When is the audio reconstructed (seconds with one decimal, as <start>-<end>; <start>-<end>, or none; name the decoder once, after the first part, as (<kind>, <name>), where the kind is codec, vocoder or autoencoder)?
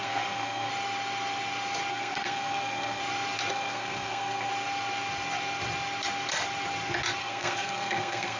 0.0-0.7 (codec, SNAC); 1.9-3.0; 3.5-4.5; 7.2-8.4